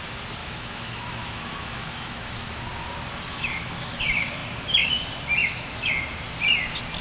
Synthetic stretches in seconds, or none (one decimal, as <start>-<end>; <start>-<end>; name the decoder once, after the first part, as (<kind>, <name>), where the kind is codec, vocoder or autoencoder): 0.4-2.5 (autoencoder, DAC-VAE); 3.3-4.0; 5.4-5.9